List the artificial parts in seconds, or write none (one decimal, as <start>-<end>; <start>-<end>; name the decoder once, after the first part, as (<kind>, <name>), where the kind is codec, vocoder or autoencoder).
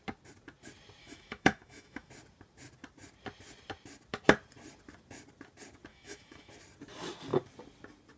1.0-2.1 (autoencoder, DAC-VAE); 5.9-6.5